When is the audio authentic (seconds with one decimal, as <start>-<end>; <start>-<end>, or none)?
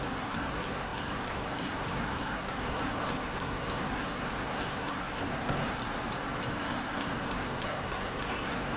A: 5.8-6.5